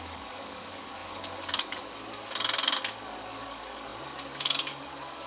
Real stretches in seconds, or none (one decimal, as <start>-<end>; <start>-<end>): none